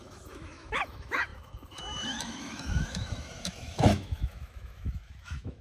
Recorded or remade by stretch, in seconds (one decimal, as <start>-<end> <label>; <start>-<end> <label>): 0.0-5.6 remade